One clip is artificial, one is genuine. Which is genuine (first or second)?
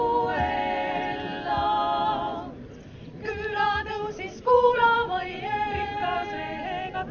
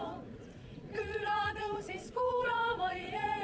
first